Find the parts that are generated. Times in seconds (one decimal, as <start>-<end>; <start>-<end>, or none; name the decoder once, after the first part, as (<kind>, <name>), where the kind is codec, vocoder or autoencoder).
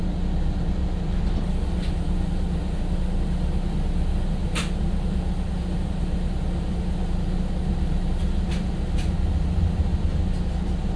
none